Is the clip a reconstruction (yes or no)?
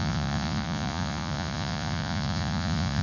yes